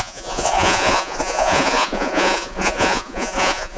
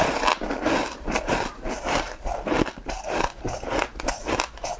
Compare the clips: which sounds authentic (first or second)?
second